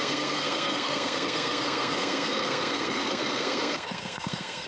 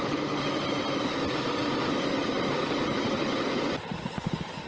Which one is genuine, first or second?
second